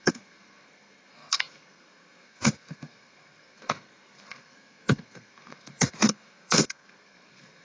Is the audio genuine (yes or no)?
no